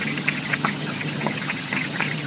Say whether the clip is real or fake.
fake